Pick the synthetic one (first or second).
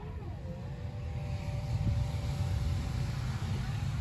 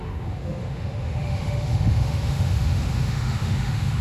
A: second